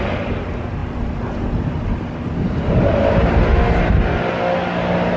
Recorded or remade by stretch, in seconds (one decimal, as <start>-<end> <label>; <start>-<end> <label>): 0.0-5.2 recorded